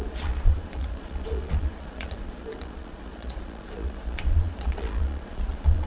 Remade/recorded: remade